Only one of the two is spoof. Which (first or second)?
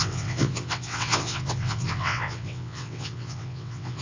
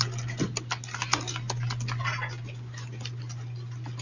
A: first